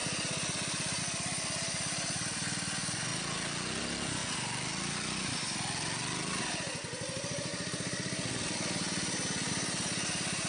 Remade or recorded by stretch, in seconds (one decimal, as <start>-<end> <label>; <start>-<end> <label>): 0.0-10.5 recorded